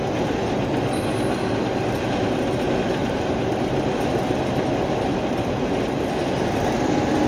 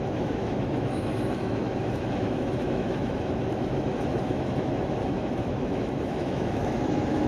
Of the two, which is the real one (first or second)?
first